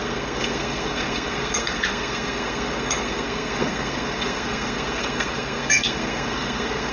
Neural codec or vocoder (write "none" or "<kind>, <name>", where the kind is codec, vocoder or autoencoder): codec, SNAC